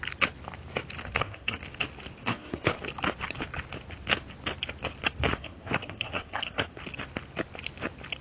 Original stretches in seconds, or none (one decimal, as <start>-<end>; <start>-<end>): 0.0-1.0; 1.6-2.2; 2.8-5.3; 6.8-8.2